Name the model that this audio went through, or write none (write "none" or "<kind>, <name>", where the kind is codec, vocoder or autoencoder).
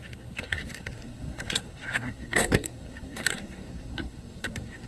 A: codec, SNAC